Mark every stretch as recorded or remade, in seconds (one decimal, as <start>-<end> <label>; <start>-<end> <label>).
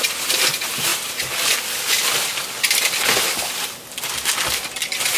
0.0-5.2 recorded